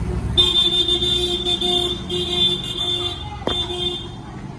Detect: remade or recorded recorded